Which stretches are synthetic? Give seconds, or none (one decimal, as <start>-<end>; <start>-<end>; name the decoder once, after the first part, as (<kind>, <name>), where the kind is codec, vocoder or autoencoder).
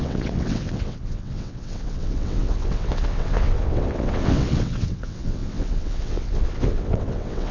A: 0.0-7.5 (vocoder, WaveNeXt)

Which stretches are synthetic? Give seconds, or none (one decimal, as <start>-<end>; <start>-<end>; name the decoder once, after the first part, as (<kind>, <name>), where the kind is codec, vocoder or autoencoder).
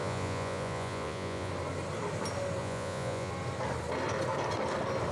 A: 0.0-1.5 (vocoder, Vocos); 2.6-3.3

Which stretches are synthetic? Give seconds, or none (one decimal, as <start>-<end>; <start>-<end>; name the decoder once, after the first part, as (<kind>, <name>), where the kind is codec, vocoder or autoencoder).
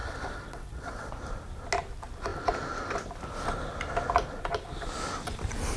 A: 0.0-1.1 (vocoder, WaveNeXt)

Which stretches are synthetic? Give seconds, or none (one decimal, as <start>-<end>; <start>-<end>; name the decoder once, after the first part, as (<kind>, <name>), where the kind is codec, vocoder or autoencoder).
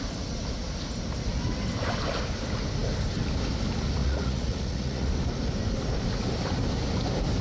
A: 4.0-5.1 (vocoder, Vocos)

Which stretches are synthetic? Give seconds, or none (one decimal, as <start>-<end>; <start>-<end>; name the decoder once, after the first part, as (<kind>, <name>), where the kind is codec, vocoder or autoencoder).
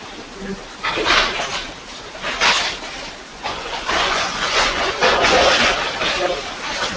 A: 3.3-5.7 (vocoder, Vocos)